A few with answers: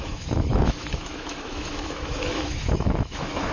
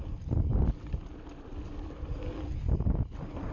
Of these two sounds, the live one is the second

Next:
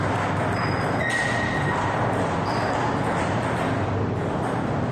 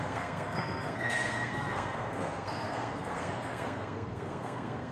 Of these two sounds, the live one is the first